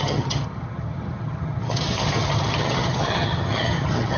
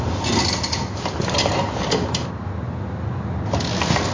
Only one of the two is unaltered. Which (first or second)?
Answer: second